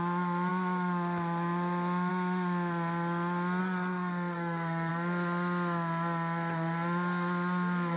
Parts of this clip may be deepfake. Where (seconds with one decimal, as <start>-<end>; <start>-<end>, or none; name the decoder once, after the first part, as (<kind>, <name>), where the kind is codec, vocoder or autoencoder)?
3.6-4.9 (codec, SNAC)